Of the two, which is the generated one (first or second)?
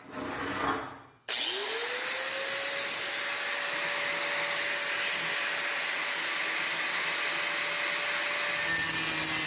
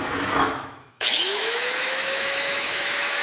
second